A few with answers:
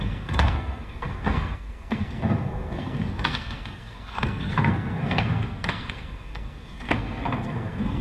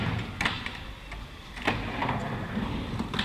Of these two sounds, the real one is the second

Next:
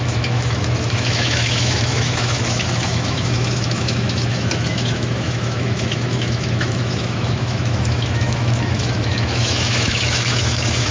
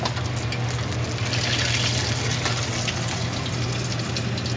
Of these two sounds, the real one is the second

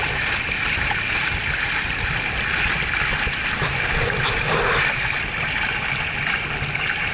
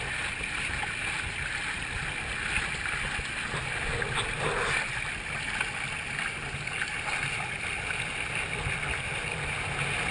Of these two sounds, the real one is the second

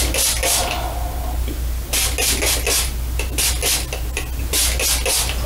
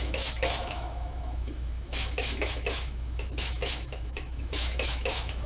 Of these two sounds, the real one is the first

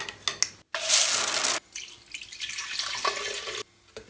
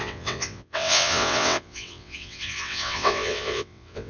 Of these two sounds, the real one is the first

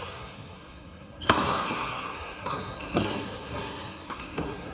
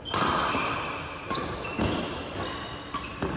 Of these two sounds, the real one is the second